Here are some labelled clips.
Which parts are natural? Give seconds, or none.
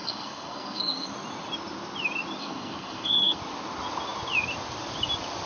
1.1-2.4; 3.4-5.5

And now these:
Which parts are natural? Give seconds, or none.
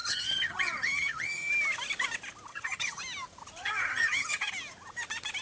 1.5-2.5; 3.0-3.6; 4.5-5.4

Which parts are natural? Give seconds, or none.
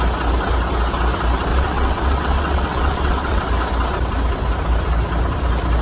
0.0-1.5; 3.4-5.8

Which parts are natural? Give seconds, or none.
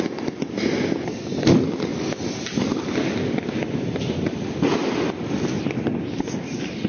0.0-6.9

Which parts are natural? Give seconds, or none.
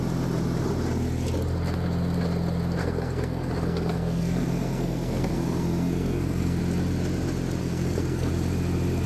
0.0-2.8; 6.6-7.6; 8.3-9.1